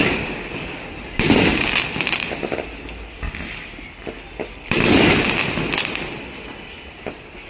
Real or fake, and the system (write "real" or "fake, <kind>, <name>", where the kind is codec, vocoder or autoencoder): real